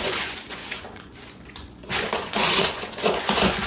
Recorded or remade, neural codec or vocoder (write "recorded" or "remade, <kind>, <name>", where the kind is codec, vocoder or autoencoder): remade, vocoder, Vocos